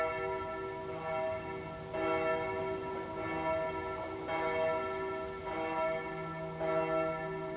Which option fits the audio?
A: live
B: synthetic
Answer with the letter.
A